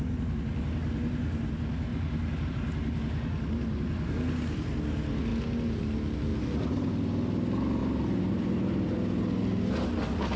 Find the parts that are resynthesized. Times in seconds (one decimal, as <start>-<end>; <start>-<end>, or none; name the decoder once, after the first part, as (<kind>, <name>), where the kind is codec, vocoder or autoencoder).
6.3-6.9 (vocoder, BigVGAN v2); 7.8-8.9